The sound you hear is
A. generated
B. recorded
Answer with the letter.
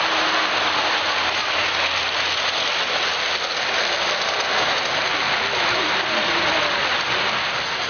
B